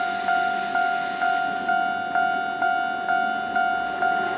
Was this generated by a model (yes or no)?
no